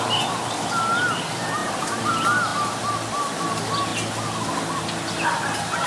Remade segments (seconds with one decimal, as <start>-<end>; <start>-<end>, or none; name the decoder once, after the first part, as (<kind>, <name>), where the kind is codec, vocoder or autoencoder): none